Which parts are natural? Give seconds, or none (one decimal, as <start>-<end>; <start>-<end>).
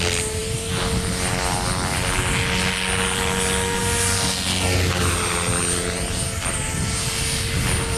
0.0-8.0